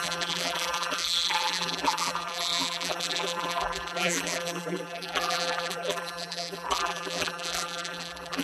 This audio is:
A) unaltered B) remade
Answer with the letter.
B